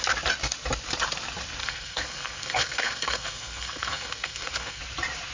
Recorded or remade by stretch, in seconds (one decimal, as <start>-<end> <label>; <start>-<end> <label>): 0.0-1.6 recorded; 1.6-4.8 remade; 4.8-5.3 recorded